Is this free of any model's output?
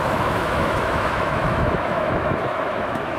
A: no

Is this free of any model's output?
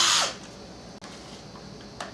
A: yes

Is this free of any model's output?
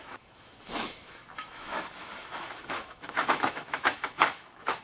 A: no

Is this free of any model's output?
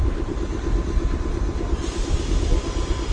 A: yes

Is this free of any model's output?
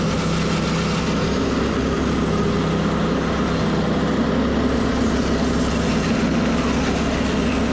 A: yes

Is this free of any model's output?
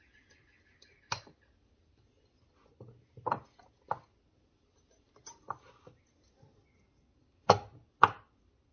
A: yes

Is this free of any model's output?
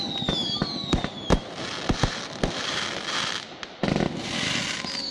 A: yes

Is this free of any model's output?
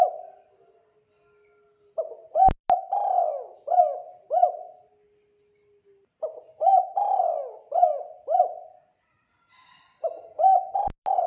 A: yes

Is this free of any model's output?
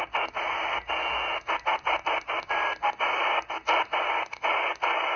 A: yes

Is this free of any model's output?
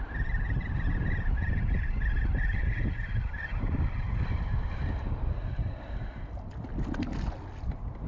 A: yes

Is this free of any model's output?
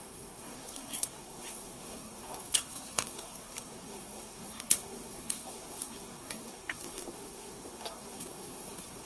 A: no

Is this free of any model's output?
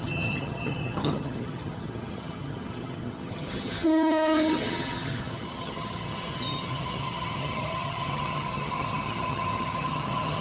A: no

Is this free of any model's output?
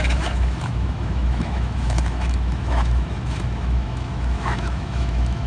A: no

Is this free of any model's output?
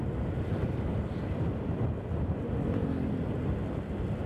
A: yes